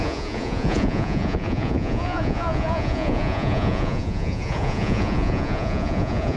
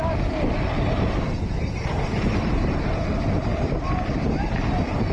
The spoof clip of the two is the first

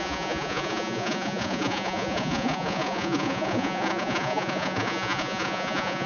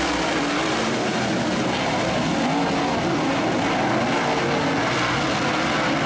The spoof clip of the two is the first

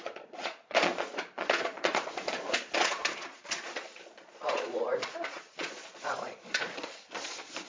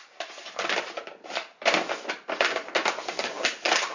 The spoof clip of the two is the first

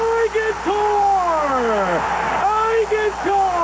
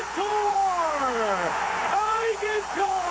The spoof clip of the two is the second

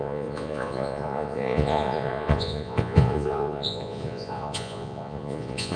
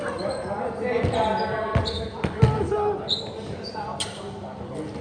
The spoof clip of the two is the first